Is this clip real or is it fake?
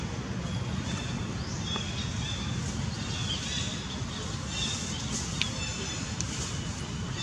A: real